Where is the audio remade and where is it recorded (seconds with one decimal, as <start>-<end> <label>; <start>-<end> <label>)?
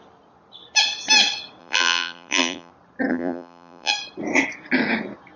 0.0-1.6 recorded; 1.6-2.7 remade; 2.7-3.1 recorded; 3.1-3.9 remade; 3.9-5.4 recorded